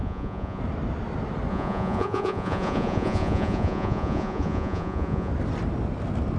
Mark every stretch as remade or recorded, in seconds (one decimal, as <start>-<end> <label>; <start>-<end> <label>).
0.0-0.6 remade; 0.6-1.5 recorded; 1.5-5.3 remade; 5.3-6.4 recorded